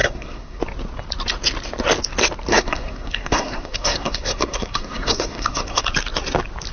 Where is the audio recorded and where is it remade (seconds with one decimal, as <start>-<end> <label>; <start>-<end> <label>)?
0.0-0.6 remade; 0.6-2.5 recorded; 2.5-5.8 remade; 5.8-6.7 recorded